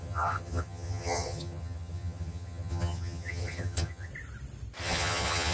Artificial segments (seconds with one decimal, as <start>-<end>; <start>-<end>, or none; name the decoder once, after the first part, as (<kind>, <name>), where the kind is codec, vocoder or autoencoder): 0.0-4.1 (vocoder, HiFi-GAN); 4.8-5.5